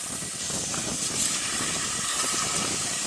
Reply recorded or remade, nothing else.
recorded